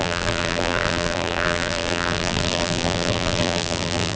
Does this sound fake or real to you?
fake